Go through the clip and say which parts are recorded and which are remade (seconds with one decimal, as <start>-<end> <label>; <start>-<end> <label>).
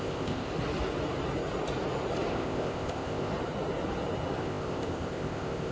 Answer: 0.0-0.5 remade; 0.5-2.3 recorded; 2.3-3.3 remade; 3.3-4.4 recorded; 4.4-5.7 remade